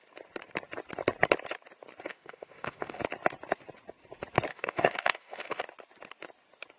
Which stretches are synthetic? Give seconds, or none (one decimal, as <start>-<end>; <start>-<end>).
2.1-3.0; 4.5-5.6